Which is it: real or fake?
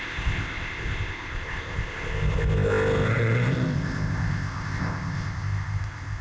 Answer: fake